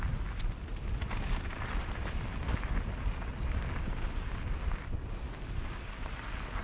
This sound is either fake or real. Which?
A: real